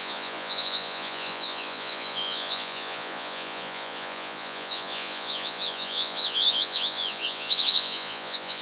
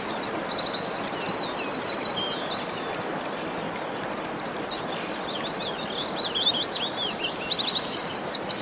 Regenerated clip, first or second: first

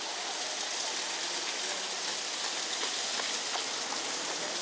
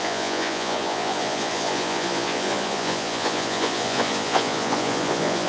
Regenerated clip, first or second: second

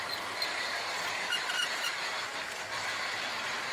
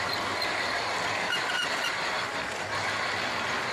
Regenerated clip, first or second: first